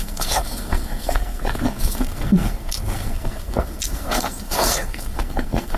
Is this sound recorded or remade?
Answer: remade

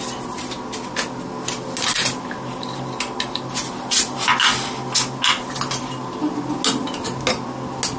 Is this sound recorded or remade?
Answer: recorded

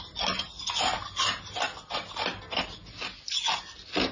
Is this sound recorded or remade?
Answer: recorded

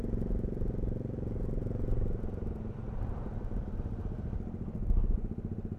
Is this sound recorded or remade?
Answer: recorded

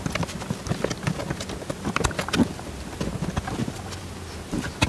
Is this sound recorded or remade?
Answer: recorded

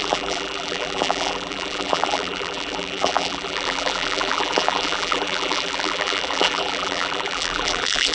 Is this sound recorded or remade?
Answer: remade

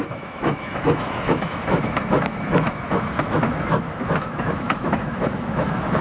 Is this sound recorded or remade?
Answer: remade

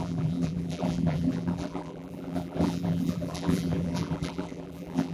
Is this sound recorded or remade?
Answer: remade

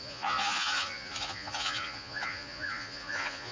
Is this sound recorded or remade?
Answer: remade